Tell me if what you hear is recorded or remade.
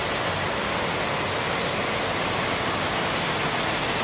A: recorded